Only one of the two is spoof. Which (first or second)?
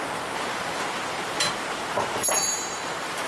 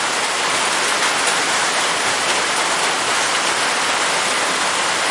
first